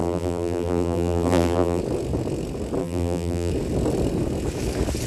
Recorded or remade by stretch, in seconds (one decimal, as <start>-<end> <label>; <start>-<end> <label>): 0.0-1.8 remade; 1.8-2.8 recorded; 2.8-3.5 remade; 3.5-5.1 recorded